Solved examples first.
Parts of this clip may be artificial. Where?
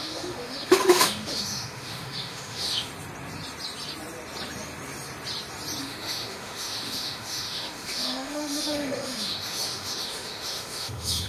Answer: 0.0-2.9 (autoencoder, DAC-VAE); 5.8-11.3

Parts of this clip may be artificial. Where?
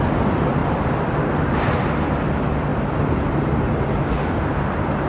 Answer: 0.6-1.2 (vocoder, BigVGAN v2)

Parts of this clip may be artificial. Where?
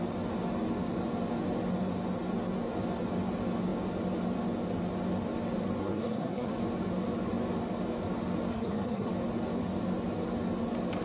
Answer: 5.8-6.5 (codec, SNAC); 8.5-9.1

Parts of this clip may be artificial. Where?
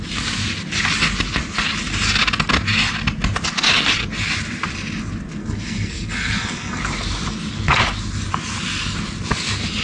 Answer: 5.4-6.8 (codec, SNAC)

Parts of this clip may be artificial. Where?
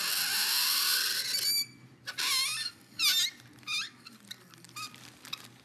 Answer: none